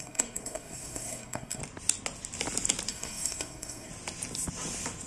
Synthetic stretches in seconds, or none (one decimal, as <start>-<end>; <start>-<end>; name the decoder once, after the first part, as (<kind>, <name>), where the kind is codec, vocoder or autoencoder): 0.0-1.6 (codec, SNAC); 2.9-3.9